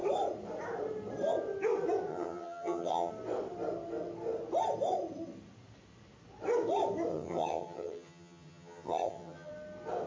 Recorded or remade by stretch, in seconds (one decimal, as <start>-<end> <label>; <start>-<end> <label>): 0.0-2.1 recorded; 2.1-3.1 remade; 3.1-7.1 recorded; 7.1-9.5 remade; 9.5-10.1 recorded